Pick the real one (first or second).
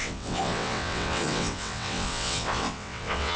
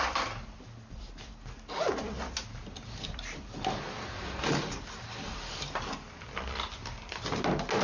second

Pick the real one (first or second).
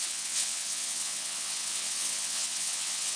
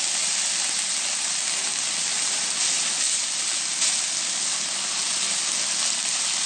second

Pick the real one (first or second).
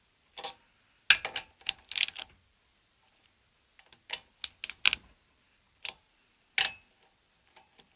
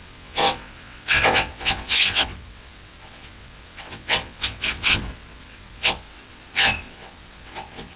first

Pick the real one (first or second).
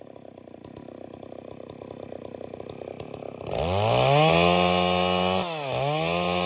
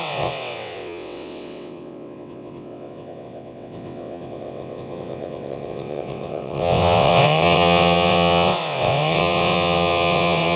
first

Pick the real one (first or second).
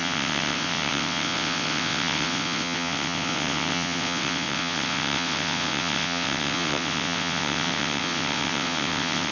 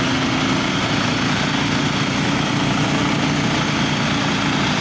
second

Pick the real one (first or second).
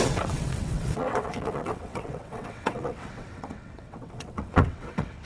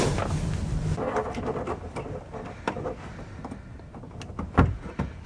second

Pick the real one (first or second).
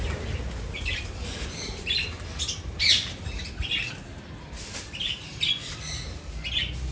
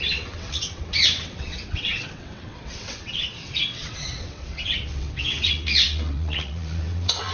first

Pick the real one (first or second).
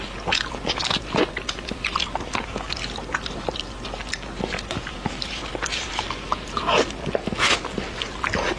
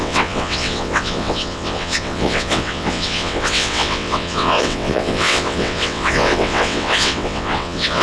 first